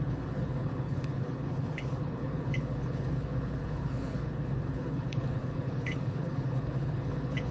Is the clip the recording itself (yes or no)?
no